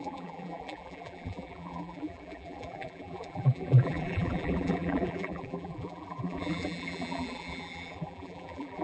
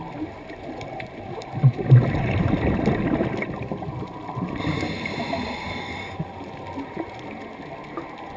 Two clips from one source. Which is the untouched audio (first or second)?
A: second